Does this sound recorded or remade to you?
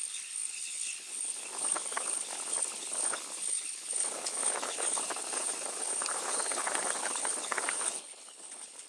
remade